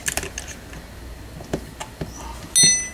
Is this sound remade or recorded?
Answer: recorded